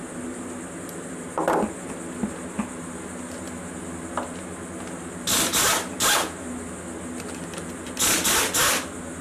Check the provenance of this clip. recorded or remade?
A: recorded